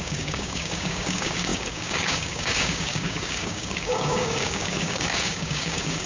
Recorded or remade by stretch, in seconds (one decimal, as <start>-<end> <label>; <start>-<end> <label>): 0.0-6.1 remade